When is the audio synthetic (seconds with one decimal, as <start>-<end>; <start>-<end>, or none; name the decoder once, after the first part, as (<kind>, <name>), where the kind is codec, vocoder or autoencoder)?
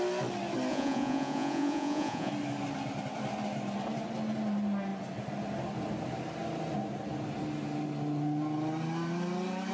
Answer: 0.7-2.3 (vocoder, Vocos)